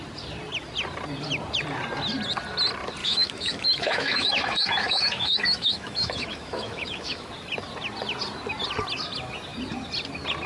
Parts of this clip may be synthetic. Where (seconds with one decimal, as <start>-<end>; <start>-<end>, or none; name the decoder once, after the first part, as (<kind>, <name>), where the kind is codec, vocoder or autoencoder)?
3.0-7.3 (autoencoder, DAC-VAE)